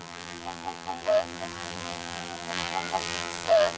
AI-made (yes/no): yes